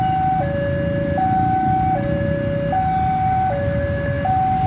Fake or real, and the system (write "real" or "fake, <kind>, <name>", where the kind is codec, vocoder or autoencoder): real